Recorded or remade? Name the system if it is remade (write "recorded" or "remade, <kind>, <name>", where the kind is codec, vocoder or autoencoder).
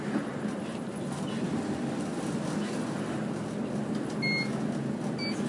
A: recorded